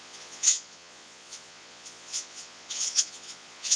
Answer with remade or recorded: remade